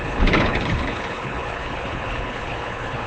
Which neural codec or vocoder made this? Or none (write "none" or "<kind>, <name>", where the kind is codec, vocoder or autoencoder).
codec, HILCodec